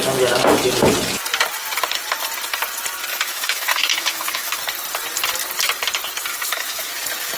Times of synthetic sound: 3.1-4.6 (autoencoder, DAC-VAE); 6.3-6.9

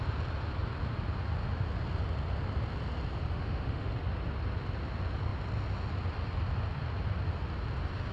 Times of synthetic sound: 3.3-3.9 (autoencoder, DAC-VAE)

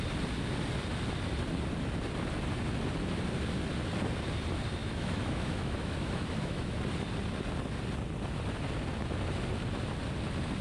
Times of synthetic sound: 4.8-6.8 (autoencoder, DAC-VAE)

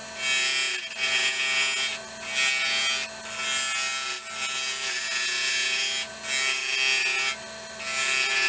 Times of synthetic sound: none

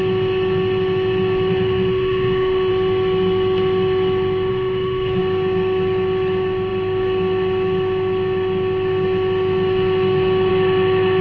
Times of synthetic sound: 1.5-2.7 (autoencoder, DAC-VAE); 4.5-5.2

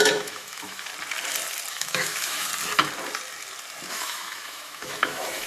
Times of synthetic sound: 0.0-0.9 (autoencoder, DAC-VAE); 1.7-2.5; 3.9-5.5